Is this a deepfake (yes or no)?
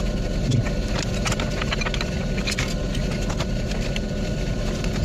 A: no